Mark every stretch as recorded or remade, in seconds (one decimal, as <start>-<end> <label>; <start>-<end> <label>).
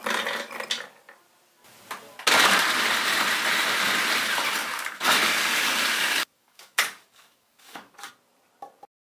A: 0.0-4.6 recorded; 4.6-8.1 remade; 8.1-9.2 recorded